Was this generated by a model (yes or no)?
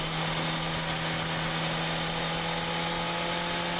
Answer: no